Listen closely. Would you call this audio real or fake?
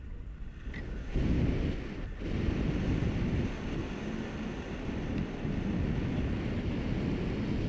real